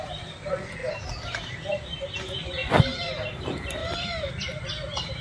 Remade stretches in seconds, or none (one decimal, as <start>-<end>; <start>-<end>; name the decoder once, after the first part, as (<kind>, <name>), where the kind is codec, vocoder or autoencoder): 0.0-0.8 (vocoder, BigVGAN v2); 1.7-2.6; 3.4-5.2